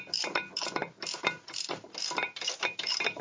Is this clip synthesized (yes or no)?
yes